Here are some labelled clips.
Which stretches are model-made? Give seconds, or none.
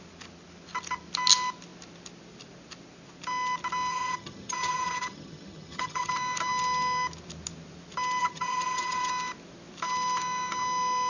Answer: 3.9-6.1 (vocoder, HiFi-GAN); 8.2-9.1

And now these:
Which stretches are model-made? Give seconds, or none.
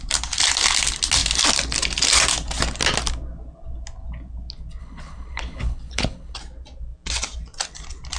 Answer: 4.8-6.4 (codec, HILCodec)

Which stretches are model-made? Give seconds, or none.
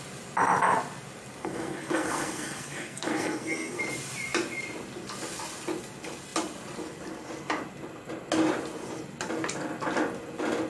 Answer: 1.4-3.8 (codec, SNAC)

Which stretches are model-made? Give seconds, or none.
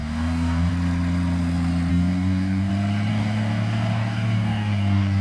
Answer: 0.0-0.7 (codec, DAC); 1.9-2.7; 3.1-5.2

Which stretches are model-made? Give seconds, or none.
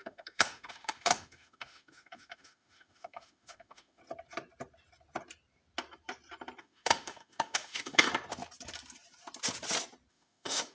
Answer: 0.0-4.0 (autoencoder, DAC-VAE); 6.6-8.1; 10.1-10.7